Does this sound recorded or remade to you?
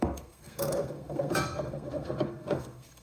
remade